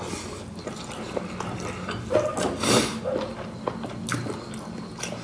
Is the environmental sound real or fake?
real